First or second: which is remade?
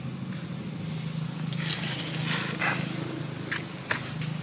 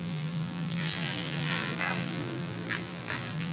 second